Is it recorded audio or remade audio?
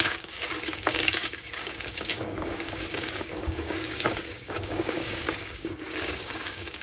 remade